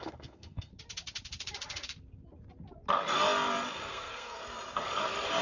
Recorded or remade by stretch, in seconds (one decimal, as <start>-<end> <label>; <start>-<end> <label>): 0.0-0.7 remade; 0.7-3.9 recorded; 3.9-4.4 remade; 4.4-5.4 recorded